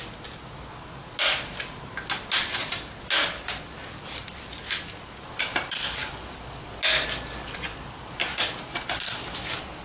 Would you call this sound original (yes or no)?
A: yes